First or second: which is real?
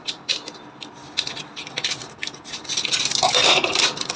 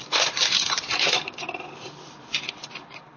first